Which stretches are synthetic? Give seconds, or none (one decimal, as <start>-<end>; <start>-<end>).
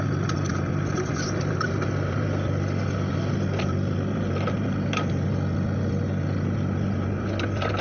none